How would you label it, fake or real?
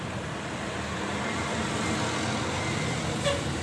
real